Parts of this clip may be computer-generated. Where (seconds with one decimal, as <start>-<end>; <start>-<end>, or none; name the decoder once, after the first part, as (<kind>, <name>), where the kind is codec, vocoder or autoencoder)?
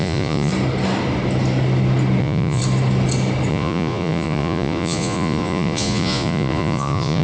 0.0-0.5 (vocoder, Vocos); 2.2-2.6; 3.5-7.2